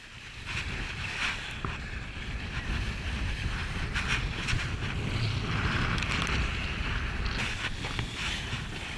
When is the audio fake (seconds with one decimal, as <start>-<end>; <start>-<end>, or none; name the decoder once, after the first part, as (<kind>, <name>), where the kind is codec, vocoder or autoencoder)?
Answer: 3.6-4.3 (vocoder, BigVGAN v2)